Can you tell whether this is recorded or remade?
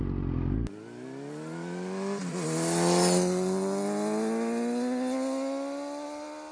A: recorded